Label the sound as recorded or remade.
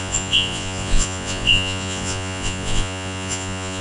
remade